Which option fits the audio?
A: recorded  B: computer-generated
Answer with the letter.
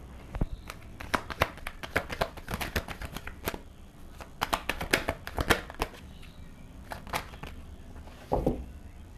A